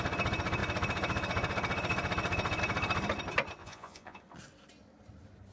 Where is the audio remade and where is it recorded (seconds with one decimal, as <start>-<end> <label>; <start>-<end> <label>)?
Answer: 0.0-3.6 recorded; 3.6-4.2 remade; 4.2-5.5 recorded